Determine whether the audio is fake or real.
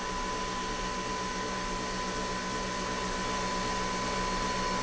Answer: real